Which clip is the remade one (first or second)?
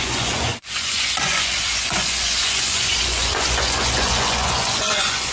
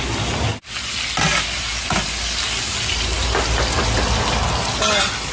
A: first